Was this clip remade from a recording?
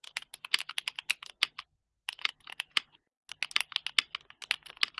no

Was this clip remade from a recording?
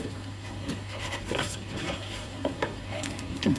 yes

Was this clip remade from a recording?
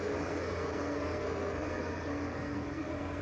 yes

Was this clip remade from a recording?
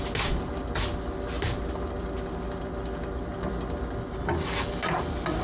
no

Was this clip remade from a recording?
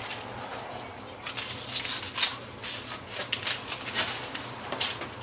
no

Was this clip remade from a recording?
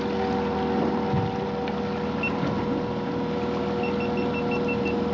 no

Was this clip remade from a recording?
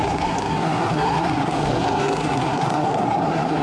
yes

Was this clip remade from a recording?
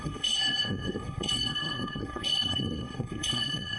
yes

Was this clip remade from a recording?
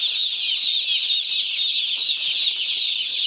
no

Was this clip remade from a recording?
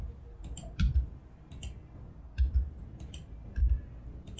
no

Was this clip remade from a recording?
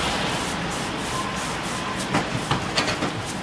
no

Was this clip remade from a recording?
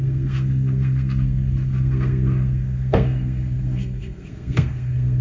yes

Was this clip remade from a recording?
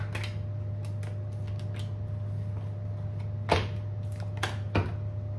no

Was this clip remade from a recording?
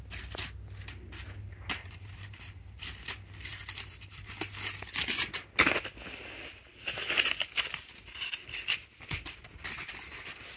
no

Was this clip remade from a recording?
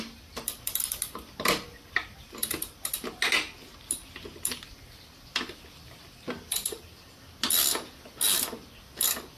no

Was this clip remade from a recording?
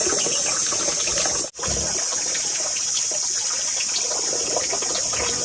no